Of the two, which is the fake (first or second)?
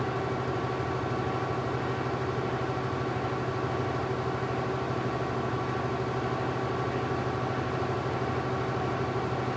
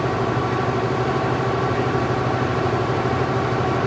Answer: second